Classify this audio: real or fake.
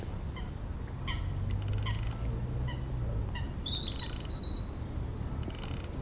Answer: real